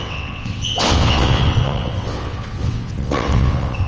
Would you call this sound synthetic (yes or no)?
yes